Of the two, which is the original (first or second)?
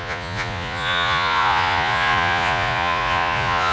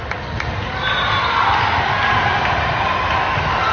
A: second